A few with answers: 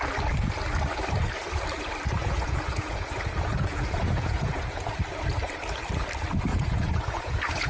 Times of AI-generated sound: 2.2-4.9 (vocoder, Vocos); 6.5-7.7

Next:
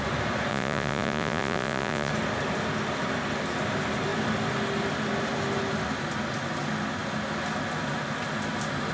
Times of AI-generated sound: 0.5-2.1 (vocoder, Vocos)

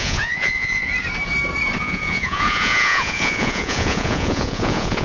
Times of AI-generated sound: 0.0-0.9 (vocoder, Vocos); 1.8-5.0

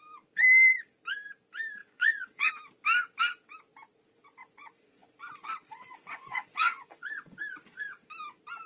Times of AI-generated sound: 1.8-2.5 (vocoder, Vocos); 4.4-7.4

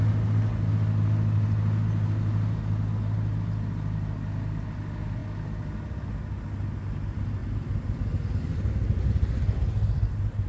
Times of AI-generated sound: none